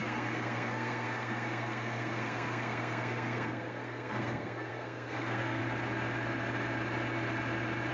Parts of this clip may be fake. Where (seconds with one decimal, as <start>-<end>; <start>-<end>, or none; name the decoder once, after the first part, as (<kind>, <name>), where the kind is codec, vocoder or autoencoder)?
0.0-5.6 (codec, SNAC)